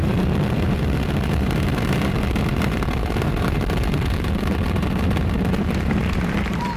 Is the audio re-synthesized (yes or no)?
yes